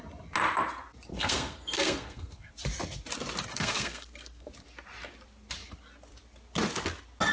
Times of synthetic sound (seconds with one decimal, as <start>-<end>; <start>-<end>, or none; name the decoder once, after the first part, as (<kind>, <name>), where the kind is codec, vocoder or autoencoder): 1.1-2.5 (codec, SNAC); 3.5-4.5